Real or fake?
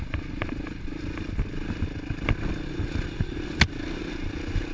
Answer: real